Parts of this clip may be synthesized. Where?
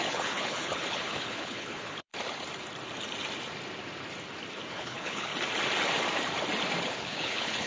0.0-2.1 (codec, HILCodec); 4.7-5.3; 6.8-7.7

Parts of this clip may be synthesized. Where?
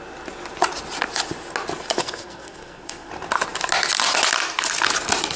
2.0-3.1 (codec, SNAC)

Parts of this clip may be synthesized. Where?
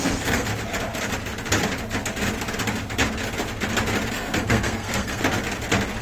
0.0-0.5 (codec, SNAC); 4.1-5.2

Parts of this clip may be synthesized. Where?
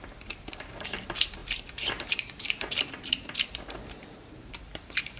0.0-5.2 (vocoder, BigVGAN v2)